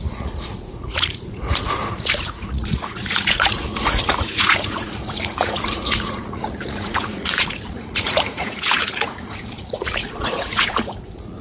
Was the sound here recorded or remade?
remade